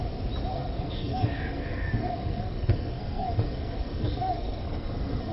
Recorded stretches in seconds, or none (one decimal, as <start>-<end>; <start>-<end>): 0.0-0.5